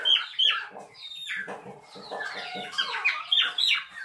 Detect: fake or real real